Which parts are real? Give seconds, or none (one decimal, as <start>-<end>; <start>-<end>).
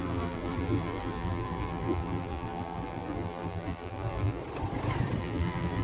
4.4-5.2